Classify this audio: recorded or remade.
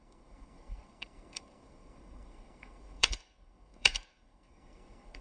remade